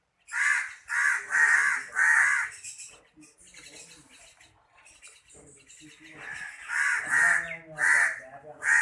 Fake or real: real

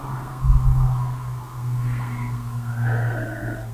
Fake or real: fake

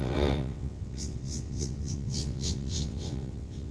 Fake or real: fake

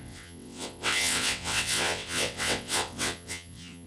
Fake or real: fake